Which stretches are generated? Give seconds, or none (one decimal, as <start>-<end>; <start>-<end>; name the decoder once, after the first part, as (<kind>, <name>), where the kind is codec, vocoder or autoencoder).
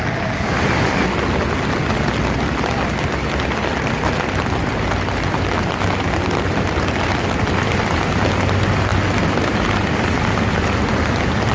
none